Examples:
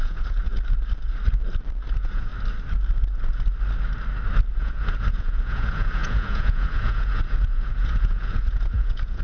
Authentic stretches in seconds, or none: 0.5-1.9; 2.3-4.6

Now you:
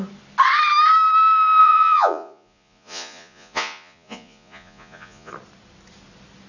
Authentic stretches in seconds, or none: 0.0-1.6; 5.3-6.5

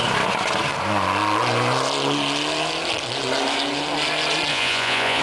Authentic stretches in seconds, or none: 0.0-4.5

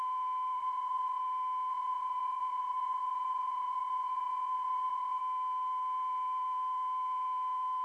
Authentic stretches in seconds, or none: 0.0-0.6; 1.2-1.7; 5.2-7.8